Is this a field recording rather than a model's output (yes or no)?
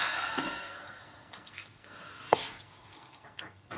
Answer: no